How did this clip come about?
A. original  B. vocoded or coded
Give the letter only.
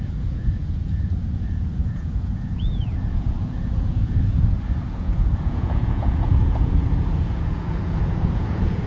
B